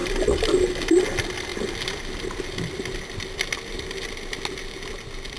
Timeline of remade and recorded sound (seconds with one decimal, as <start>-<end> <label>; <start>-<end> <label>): 0.0-5.4 recorded